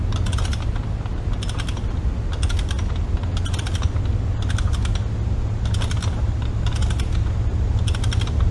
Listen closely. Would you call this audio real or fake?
real